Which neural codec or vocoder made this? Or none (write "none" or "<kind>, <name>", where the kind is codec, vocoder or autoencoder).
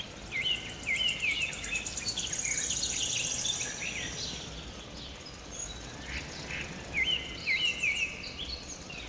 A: none